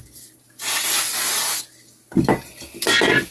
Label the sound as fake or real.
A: real